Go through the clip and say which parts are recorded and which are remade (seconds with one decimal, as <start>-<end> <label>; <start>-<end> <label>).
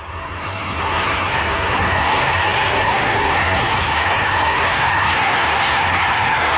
0.0-6.6 remade